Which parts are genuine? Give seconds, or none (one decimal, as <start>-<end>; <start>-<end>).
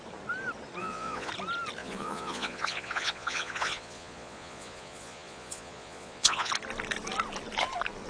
0.0-0.8; 1.3-1.8; 6.5-8.1